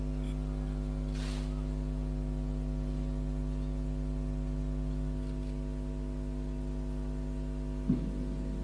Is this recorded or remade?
recorded